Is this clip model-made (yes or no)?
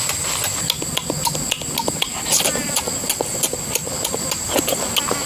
no